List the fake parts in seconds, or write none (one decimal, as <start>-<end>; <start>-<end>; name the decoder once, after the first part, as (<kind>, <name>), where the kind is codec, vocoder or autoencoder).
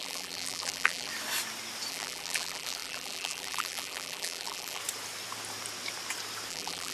0.0-1.1 (vocoder, BigVGAN v2); 1.9-4.8; 6.5-6.9